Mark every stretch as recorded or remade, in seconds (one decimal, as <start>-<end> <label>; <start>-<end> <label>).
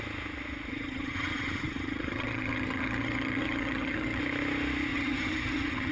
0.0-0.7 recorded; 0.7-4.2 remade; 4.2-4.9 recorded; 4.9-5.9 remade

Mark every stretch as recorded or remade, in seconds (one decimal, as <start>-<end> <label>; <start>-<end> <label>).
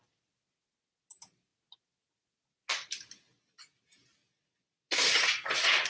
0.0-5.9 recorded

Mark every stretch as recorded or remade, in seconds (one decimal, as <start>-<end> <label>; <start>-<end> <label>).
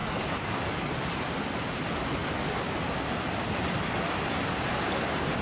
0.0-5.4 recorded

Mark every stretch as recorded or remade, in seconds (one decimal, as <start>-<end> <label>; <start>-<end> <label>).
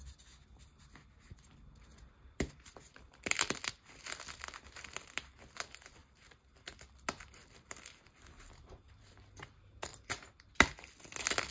0.0-11.5 recorded